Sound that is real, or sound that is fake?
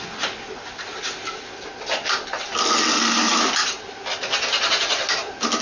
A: real